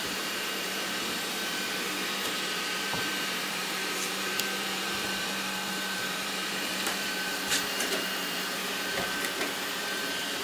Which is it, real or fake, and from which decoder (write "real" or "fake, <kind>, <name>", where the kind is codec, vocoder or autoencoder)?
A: fake, vocoder, BigVGAN v2